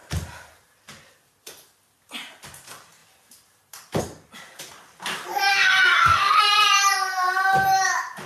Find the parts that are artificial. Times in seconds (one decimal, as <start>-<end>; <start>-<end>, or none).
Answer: 5.5-6.4